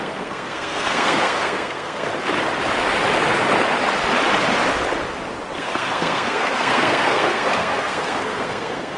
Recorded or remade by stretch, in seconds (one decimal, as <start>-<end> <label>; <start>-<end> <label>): 0.0-2.1 remade; 2.1-5.6 recorded; 5.6-9.0 remade